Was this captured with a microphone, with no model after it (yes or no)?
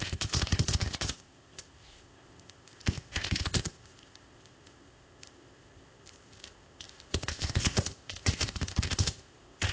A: no